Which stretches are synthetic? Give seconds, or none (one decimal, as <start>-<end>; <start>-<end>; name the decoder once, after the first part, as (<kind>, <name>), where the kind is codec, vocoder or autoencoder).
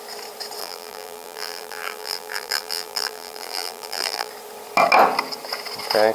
0.6-4.3 (vocoder, BigVGAN v2)